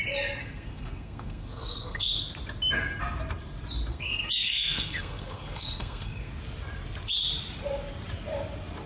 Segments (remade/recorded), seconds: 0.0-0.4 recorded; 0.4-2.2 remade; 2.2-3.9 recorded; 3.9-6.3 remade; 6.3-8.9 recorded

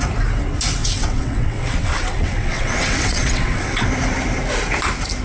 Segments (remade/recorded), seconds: 0.0-0.8 recorded; 0.8-3.9 remade; 3.9-5.2 recorded

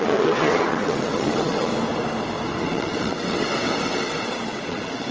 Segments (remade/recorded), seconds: 0.0-1.7 remade; 1.7-2.6 recorded; 2.6-5.1 remade

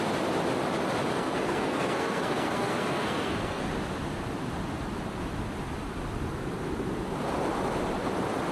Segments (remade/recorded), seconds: 0.0-1.1 recorded; 1.1-3.7 remade; 3.7-8.5 recorded

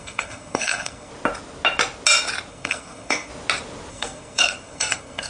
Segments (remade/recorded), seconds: 0.0-1.1 remade; 1.1-2.5 recorded; 2.5-3.3 remade; 3.3-3.9 recorded; 3.9-5.3 remade

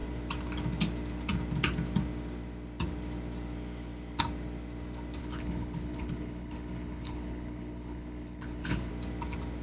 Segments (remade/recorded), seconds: 0.0-5.2 recorded; 5.2-8.9 remade; 8.9-9.6 recorded

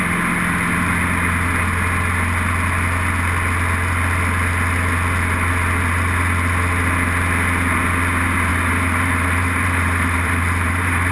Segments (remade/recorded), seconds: 0.0-8.5 recorded; 8.5-11.1 remade